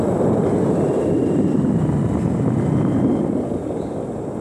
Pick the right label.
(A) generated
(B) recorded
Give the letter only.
B